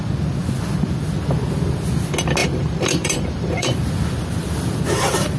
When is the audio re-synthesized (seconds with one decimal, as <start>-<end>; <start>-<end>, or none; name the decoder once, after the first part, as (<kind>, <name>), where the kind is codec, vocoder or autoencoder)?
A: 2.4-3.9 (vocoder, BigVGAN v2)